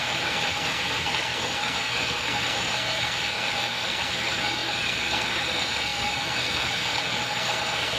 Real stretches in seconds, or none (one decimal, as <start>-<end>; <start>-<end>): none